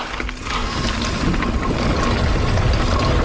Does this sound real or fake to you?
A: real